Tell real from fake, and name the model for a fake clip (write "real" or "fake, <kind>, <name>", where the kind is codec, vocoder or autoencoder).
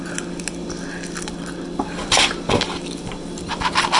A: real